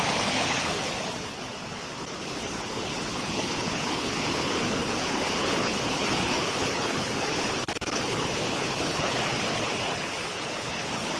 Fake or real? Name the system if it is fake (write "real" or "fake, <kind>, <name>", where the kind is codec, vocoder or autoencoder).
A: fake, codec, HILCodec